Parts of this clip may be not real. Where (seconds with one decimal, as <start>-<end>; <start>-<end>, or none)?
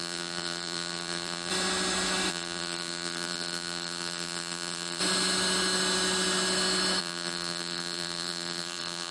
0.0-1.5; 2.3-5.0; 7.0-9.1